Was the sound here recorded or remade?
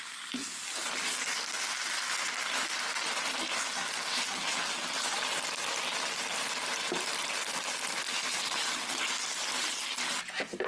recorded